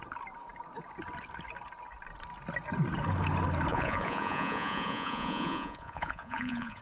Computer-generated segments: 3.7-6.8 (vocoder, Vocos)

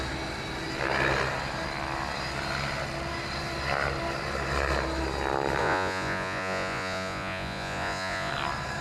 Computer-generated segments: 5.6-8.3 (vocoder, Vocos)

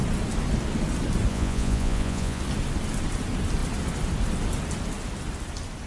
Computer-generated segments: 1.3-2.4 (vocoder, Vocos)

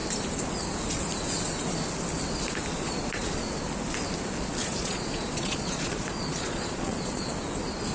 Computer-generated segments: 2.7-3.4 (vocoder, Vocos); 4.6-7.3

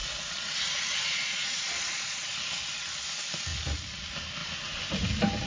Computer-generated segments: 0.9-2.3 (vocoder, Vocos)